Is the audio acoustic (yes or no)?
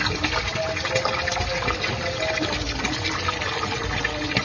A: yes